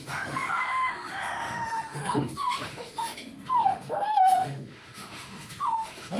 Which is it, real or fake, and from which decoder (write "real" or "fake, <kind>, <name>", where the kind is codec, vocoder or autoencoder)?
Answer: fake, autoencoder, DAC-VAE